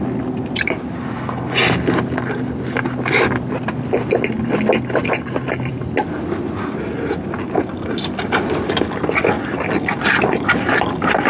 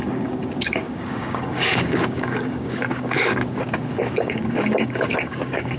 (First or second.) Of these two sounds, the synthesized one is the second